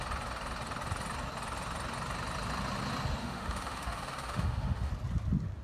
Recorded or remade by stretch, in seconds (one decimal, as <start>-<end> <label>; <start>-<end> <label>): 0.0-3.2 recorded; 3.2-4.9 remade; 4.9-5.6 recorded